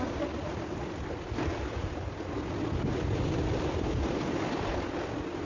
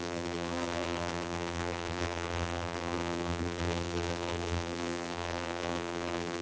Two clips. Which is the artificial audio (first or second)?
second